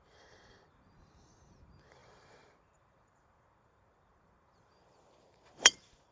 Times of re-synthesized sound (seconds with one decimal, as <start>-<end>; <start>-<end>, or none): 0.0-6.1